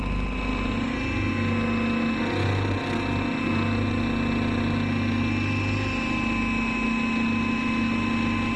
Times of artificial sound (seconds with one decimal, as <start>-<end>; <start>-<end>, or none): none